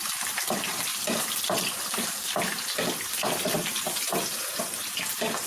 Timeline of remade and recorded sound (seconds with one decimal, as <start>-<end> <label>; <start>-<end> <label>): 0.0-0.9 recorded; 0.9-4.2 remade; 4.2-5.5 recorded